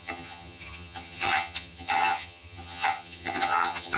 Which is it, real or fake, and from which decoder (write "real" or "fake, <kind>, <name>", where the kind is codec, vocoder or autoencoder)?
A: fake, vocoder, HiFi-GAN